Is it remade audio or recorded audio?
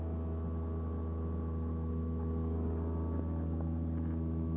recorded